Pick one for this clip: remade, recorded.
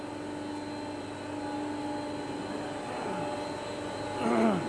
recorded